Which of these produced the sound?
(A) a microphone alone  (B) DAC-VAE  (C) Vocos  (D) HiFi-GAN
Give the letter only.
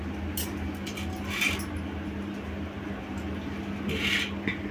A